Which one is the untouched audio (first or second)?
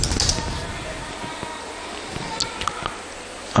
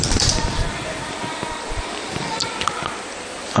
first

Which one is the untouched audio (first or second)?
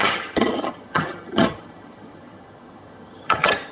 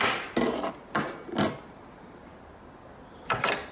second